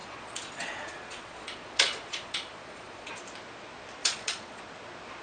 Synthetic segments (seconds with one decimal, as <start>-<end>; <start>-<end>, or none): 0.0-3.1; 4.0-4.6